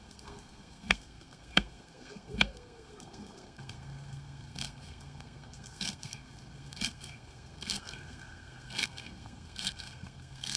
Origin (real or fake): fake